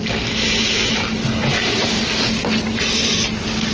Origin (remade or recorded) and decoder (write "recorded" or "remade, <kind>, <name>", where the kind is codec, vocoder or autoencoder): recorded